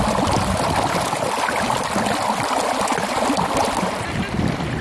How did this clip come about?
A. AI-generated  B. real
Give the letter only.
B